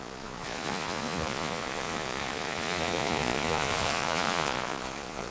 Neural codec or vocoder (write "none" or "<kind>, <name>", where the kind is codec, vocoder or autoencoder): vocoder, Vocos